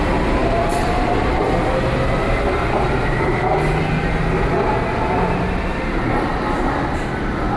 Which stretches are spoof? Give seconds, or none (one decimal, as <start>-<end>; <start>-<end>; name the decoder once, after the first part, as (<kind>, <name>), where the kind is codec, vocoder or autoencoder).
none